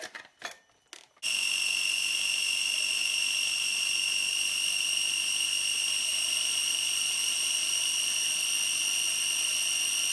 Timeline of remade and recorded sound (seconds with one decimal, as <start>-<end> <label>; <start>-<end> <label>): 0.0-10.1 recorded